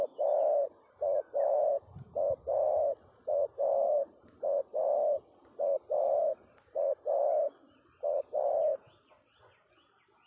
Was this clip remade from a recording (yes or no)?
no